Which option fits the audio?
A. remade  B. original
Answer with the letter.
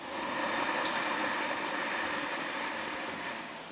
B